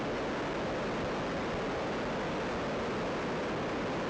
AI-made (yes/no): no